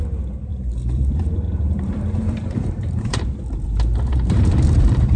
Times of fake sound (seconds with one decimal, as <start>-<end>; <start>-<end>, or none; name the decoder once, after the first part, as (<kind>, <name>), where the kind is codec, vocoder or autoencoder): 0.5-3.2 (vocoder, BigVGAN v2); 4.1-5.2